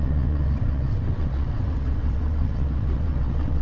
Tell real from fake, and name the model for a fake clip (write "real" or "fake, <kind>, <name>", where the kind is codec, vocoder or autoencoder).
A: fake, vocoder, WaveNeXt